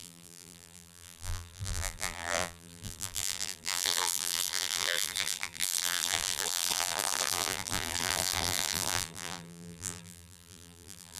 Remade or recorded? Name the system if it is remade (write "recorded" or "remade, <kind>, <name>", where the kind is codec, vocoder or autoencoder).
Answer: remade, vocoder, BigVGAN v2